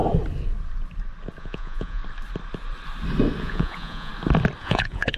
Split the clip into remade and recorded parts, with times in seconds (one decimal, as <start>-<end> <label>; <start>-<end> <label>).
0.0-1.4 recorded; 1.4-2.0 remade; 2.0-3.4 recorded; 3.4-4.1 remade; 4.1-4.6 recorded; 4.6-5.2 remade